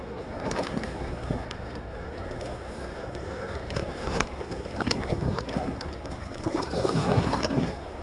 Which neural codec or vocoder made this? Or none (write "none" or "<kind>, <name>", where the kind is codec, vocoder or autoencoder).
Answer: codec, SNAC